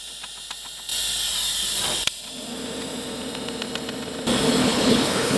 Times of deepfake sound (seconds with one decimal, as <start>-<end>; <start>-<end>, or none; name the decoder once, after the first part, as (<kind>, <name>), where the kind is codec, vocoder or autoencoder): 4.6-5.4 (codec, HILCodec)